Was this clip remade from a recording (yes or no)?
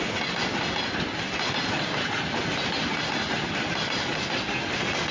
no